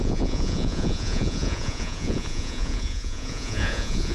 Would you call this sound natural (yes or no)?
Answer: no